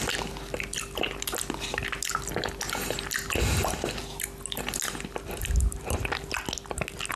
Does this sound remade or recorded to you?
recorded